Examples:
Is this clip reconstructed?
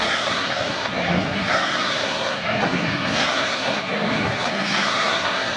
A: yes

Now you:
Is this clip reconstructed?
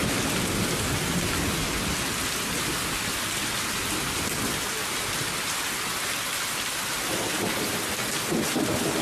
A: no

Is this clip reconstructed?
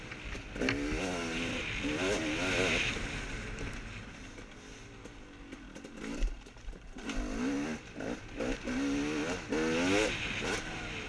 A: no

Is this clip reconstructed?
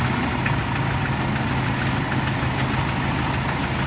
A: no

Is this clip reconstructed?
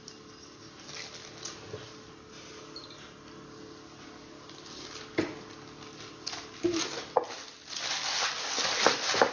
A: no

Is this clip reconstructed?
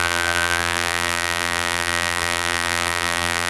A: yes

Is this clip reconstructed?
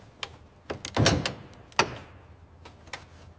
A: no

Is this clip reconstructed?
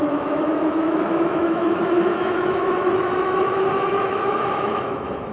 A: yes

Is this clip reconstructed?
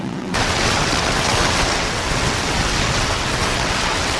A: yes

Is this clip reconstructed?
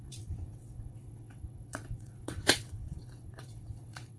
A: yes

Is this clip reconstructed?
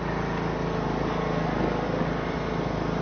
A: no